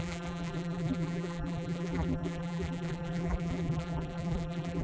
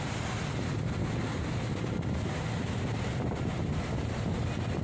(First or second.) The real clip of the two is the second